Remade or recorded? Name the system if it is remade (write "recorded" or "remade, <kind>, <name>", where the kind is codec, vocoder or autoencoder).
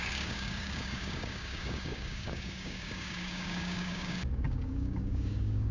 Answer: remade, codec, DAC